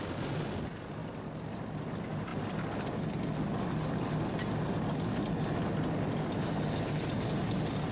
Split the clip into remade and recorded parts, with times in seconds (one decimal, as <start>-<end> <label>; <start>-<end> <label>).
0.0-7.9 recorded